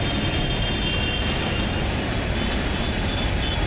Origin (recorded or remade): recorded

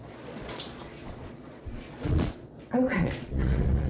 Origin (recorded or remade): remade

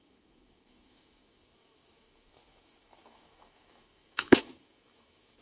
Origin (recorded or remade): remade